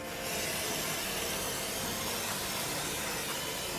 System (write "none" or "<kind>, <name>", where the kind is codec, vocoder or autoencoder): none